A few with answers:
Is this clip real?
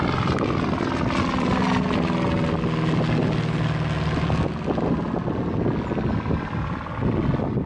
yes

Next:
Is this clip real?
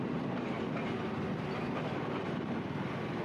yes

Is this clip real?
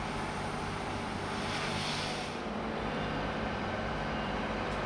yes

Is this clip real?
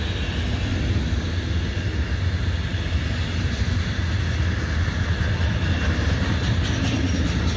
yes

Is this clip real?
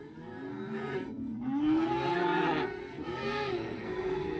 no